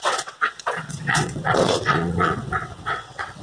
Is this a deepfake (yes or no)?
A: yes